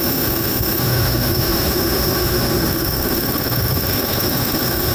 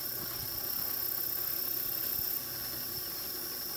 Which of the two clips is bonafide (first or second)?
second